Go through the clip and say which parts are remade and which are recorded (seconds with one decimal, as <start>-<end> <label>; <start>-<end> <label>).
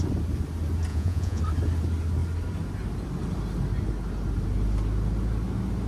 0.0-0.9 recorded; 0.9-1.4 remade; 1.4-5.9 recorded